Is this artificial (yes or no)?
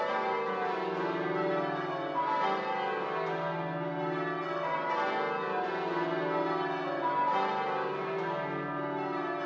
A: no